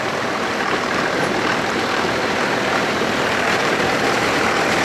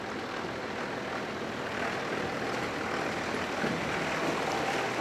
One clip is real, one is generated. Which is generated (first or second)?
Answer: first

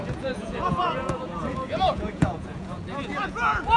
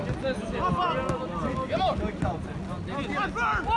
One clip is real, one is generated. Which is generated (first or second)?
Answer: first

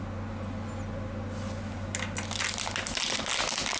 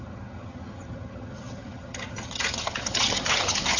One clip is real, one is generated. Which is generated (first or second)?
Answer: second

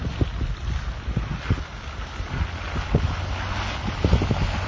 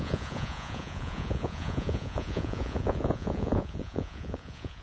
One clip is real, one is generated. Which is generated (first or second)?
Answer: second